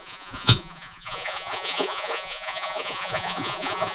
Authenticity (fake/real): fake